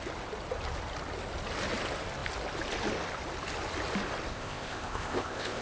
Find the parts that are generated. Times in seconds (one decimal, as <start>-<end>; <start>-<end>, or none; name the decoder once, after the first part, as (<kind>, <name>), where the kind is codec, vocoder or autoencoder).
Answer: 4.3-5.6 (codec, ZipCodec)